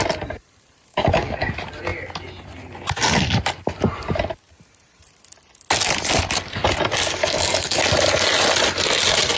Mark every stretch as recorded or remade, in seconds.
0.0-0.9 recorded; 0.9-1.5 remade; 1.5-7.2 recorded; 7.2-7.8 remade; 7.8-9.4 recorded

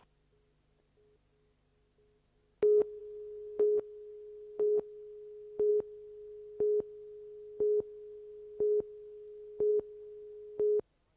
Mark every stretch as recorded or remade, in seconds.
0.0-11.2 recorded

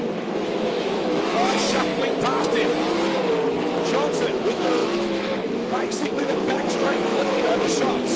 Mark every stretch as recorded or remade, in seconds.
0.0-1.9 remade; 1.9-4.1 recorded; 4.1-8.2 remade

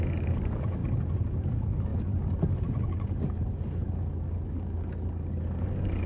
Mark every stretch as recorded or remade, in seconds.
0.0-0.8 remade; 0.8-1.4 recorded; 1.4-6.1 remade

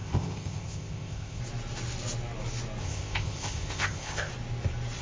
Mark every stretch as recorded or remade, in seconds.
0.0-1.4 remade; 1.4-2.8 recorded; 2.8-4.3 remade; 4.3-5.0 recorded